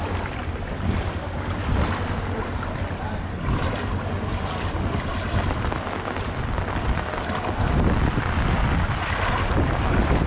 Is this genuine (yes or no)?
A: yes